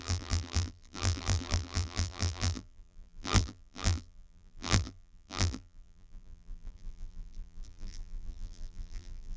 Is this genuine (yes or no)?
no